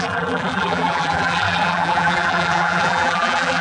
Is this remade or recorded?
remade